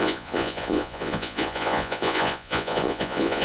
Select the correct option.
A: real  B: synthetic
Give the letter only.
B